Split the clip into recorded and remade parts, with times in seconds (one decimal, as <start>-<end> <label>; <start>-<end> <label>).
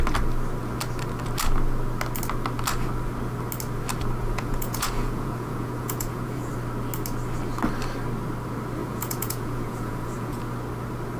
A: 0.0-4.2 recorded; 4.2-6.5 remade; 6.5-8.8 recorded; 8.8-10.4 remade; 10.4-11.2 recorded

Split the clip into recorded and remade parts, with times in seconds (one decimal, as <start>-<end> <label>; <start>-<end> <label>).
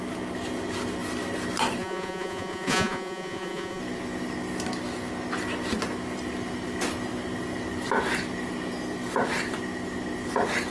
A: 0.0-1.8 recorded; 1.8-3.8 remade; 3.8-10.7 recorded